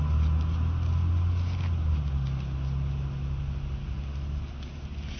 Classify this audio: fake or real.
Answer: real